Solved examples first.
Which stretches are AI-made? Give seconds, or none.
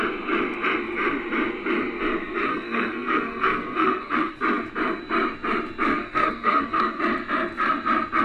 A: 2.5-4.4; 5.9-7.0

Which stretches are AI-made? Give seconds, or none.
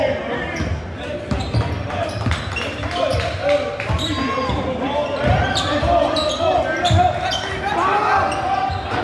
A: 5.4-6.3